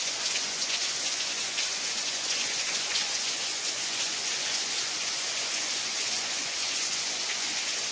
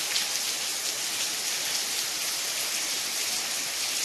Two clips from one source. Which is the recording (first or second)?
second